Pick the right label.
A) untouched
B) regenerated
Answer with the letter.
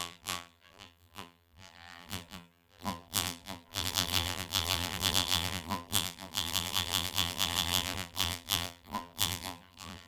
B